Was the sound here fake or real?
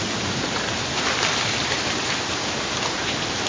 fake